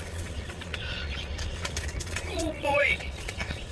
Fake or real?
fake